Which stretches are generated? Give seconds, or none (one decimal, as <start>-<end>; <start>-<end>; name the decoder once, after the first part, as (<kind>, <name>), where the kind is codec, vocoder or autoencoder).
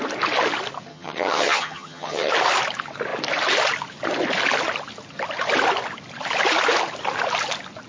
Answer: 0.9-2.3 (vocoder, HiFi-GAN)